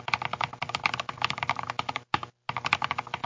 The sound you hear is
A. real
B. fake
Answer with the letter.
A